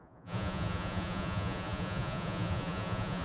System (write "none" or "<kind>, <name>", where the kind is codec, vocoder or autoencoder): vocoder, Vocos